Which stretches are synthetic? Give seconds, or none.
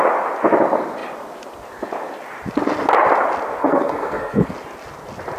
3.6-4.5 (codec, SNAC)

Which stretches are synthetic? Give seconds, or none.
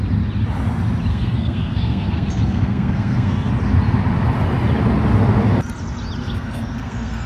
1.1-3.5 (codec, SNAC); 6.2-7.3